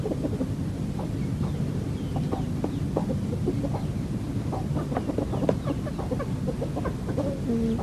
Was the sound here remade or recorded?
recorded